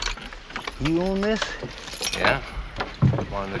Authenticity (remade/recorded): recorded